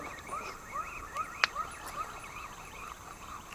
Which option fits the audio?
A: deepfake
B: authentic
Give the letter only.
B